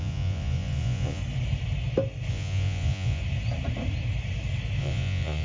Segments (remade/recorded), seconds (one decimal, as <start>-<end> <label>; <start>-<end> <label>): 0.0-1.2 remade; 1.2-2.3 recorded; 2.3-3.2 remade; 3.2-4.8 recorded; 4.8-5.4 remade